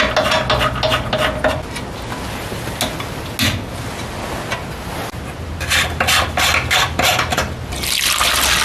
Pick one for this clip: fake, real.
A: real